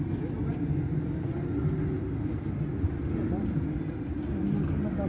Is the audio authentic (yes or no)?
yes